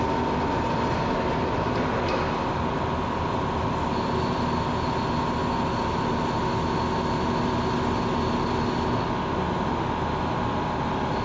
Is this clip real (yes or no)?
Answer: yes